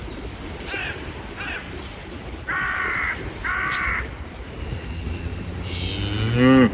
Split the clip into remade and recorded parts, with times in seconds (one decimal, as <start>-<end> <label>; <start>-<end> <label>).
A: 0.0-2.2 recorded; 2.2-4.6 remade; 4.6-5.3 recorded; 5.3-5.9 remade; 5.9-6.7 recorded